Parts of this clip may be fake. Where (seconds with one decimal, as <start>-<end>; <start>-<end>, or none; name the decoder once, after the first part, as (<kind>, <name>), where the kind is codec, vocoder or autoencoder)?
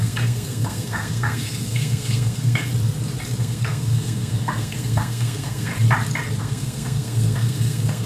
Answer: 0.0-2.7 (codec, SNAC); 3.4-5.7; 6.4-8.1